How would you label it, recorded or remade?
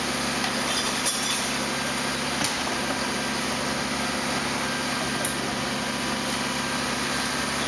recorded